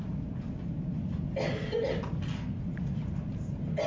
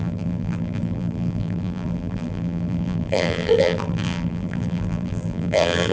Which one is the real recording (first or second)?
first